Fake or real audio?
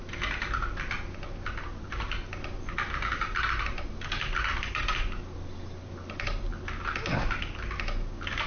real